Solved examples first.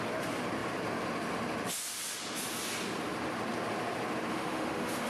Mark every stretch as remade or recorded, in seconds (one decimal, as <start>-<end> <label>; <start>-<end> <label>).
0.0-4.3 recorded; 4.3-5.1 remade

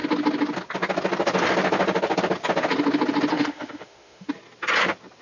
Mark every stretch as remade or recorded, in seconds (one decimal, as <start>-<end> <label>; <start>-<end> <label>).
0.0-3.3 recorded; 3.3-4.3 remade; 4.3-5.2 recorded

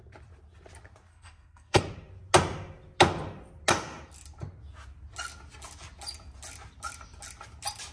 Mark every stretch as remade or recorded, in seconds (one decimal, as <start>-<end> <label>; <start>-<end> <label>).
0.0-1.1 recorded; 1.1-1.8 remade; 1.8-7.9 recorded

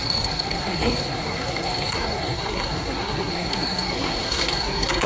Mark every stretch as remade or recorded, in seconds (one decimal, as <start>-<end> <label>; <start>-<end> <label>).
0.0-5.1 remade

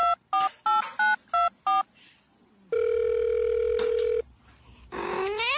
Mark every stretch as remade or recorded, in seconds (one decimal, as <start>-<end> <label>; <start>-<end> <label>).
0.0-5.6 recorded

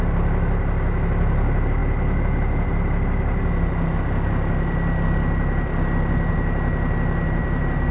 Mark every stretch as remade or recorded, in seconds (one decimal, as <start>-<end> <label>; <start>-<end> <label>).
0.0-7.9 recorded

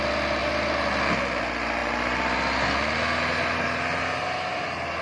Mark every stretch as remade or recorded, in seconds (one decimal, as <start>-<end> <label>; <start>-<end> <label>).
0.0-5.0 recorded